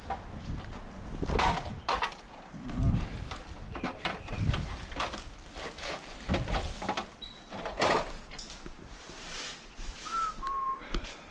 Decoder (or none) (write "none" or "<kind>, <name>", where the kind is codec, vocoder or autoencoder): none